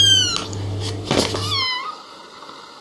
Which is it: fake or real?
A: real